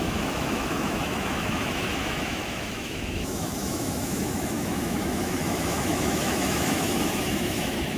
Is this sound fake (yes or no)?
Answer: yes